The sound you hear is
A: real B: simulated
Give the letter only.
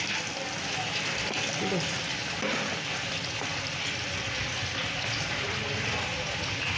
A